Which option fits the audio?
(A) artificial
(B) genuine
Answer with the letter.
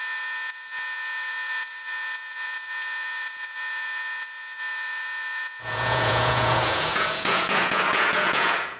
A